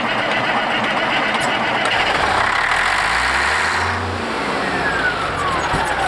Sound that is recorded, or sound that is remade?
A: recorded